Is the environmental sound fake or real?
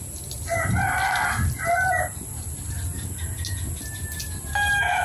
real